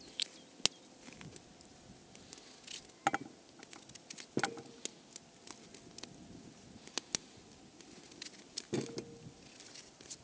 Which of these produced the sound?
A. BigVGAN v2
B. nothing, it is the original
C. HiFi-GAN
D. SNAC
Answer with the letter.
B